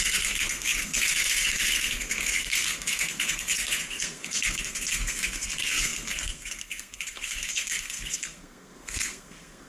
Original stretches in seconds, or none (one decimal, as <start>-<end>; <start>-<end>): none